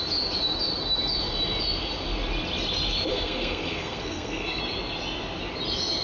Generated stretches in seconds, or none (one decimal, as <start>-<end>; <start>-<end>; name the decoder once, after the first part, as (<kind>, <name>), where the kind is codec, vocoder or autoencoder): 3.1-4.6 (codec, SNAC)